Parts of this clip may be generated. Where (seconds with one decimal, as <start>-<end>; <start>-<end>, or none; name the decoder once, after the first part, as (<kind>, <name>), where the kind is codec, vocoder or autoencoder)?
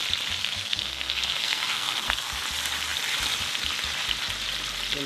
0.4-2.4 (codec, SNAC)